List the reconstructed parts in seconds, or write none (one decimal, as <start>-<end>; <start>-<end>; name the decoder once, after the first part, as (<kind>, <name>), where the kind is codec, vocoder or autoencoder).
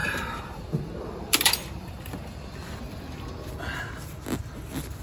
0.0-3.0 (vocoder, BigVGAN v2)